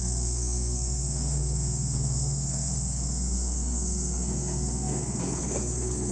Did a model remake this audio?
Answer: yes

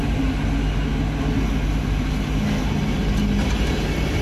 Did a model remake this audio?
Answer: no